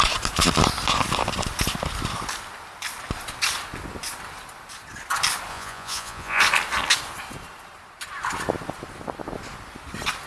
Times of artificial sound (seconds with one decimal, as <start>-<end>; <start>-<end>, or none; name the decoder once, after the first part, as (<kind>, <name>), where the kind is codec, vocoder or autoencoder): 5.5-6.4 (vocoder, Vocos)